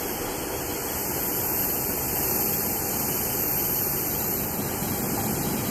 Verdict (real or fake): real